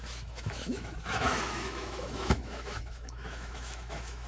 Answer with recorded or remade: remade